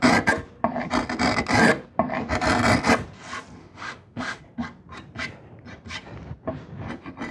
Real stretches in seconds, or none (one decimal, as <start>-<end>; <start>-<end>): 0.0-3.6; 4.4-7.3